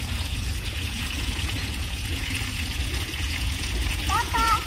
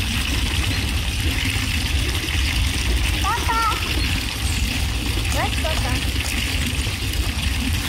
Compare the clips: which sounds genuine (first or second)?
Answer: second